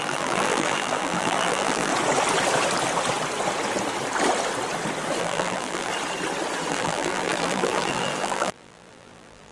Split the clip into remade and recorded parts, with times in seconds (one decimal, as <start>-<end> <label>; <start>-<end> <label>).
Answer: 0.0-1.9 remade; 1.9-5.2 recorded; 5.2-5.9 remade; 5.9-6.7 recorded; 6.7-9.5 remade